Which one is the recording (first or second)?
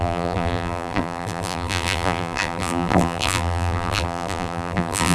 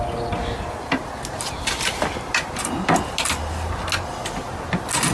second